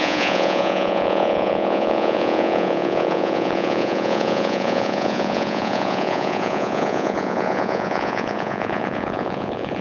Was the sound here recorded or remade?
remade